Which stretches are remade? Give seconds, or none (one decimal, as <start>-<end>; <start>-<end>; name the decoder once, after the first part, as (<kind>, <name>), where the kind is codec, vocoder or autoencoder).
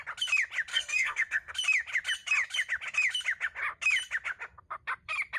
0.7-1.5 (codec, SNAC)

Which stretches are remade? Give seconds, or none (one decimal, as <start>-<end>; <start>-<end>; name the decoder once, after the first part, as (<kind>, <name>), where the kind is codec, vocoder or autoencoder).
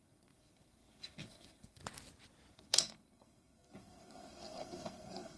0.0-1.8 (codec, SNAC); 2.5-5.4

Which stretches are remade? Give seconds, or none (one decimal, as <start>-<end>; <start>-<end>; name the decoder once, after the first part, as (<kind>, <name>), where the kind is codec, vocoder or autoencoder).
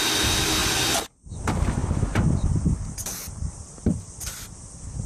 none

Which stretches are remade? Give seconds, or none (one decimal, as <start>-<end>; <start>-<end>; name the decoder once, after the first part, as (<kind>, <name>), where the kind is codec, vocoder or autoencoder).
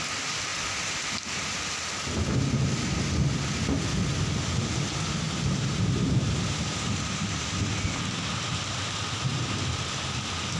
none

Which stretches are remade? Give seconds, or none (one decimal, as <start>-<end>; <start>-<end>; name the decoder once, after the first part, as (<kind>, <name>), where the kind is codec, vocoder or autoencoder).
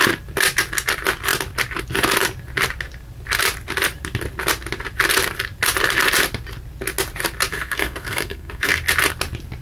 7.5-8.8 (codec, SNAC)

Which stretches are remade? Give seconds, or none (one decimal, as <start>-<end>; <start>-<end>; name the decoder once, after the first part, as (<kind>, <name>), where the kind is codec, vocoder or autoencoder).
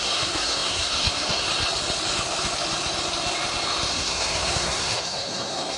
0.0-1.5 (codec, SNAC); 3.9-5.8